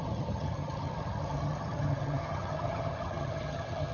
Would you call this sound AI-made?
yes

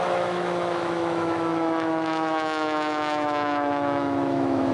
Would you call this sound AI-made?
yes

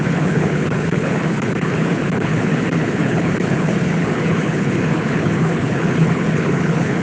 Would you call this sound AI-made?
yes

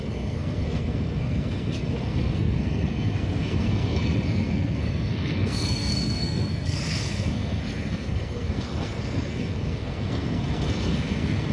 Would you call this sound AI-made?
yes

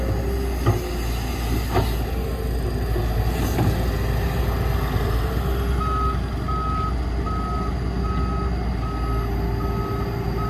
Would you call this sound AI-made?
no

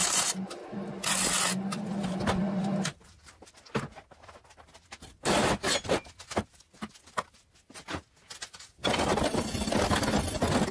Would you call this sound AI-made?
no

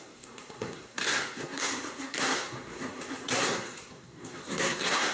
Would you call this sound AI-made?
yes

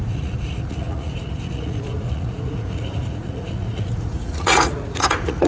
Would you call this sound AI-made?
yes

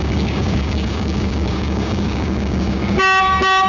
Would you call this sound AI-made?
yes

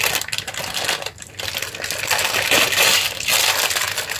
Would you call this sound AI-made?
no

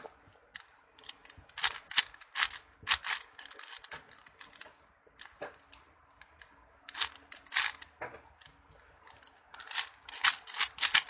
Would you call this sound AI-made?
no